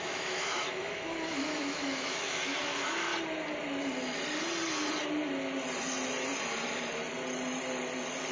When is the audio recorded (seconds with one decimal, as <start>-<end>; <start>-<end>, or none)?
3.1-8.3